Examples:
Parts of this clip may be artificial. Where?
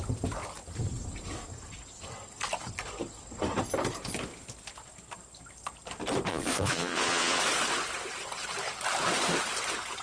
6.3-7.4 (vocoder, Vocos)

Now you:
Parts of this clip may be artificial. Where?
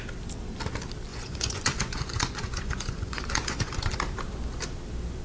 1.1-3.9 (vocoder, Vocos)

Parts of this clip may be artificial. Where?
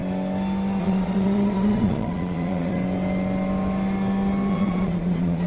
0.8-2.8 (vocoder, Vocos); 4.5-5.5